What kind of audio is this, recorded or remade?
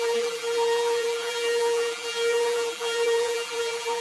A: remade